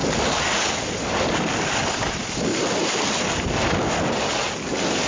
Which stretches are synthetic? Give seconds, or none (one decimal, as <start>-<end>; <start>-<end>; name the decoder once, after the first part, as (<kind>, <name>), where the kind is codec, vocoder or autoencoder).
none